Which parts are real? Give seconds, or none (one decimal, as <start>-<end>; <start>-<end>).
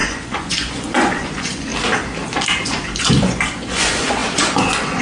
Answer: 1.7-2.5